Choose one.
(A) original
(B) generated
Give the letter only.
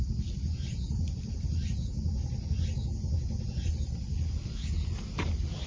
A